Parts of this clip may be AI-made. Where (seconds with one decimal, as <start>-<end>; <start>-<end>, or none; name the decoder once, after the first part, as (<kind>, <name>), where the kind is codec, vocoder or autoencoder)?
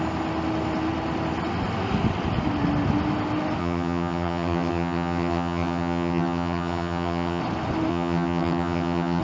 3.6-7.4 (vocoder, HiFi-GAN); 7.9-9.2